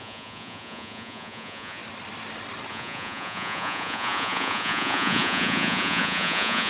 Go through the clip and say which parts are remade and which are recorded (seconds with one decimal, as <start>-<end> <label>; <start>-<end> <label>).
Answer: 0.0-1.8 remade; 1.8-2.7 recorded; 2.7-6.7 remade